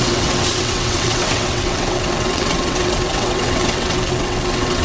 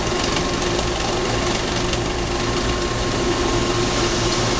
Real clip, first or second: second